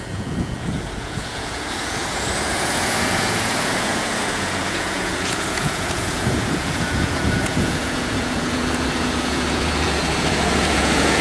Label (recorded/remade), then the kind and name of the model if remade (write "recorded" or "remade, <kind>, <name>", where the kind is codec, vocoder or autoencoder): remade, vocoder, Vocos